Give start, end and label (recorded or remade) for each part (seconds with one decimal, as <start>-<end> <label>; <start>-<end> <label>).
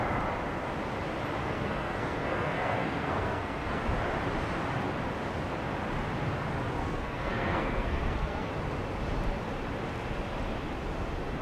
0.0-1.4 recorded; 1.4-3.8 remade; 3.8-6.8 recorded; 6.8-8.5 remade; 8.5-11.4 recorded